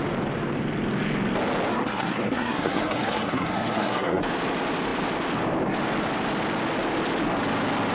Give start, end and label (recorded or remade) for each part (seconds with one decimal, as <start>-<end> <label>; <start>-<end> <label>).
0.0-1.7 recorded; 1.7-4.2 remade; 4.2-7.9 recorded

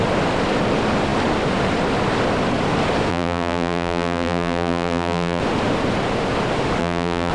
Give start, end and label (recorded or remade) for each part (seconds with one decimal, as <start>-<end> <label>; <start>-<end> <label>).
0.0-3.1 recorded; 3.1-5.4 remade; 5.4-6.8 recorded; 6.8-7.3 remade